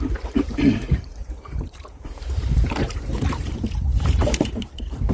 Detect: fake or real fake